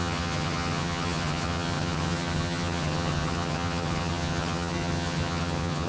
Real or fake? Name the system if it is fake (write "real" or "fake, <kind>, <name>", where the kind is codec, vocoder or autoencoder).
fake, vocoder, HiFi-GAN